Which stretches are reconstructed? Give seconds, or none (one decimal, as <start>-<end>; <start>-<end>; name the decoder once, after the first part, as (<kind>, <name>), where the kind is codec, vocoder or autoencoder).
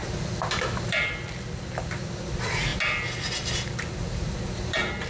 none